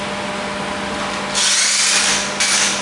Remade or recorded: recorded